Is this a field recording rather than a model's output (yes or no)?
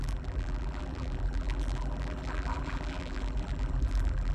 no